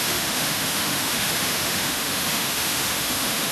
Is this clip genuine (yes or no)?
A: no